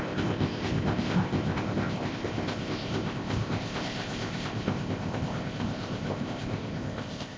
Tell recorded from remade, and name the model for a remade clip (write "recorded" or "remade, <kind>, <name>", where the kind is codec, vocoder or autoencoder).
remade, codec, ZipCodec